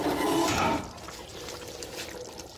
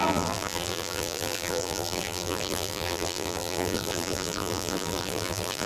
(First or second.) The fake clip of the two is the second